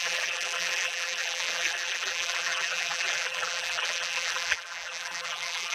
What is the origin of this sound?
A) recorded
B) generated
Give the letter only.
B